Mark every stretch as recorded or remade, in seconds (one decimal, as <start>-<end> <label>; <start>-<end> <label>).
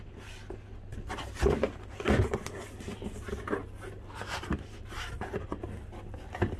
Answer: 0.0-6.6 recorded